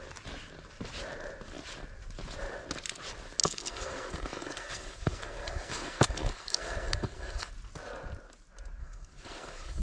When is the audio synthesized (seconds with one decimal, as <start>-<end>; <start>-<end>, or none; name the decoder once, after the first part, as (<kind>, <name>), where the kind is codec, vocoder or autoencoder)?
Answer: 3.4-7.5 (codec, SNAC); 8.8-9.8